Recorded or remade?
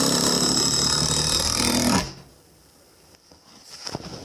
recorded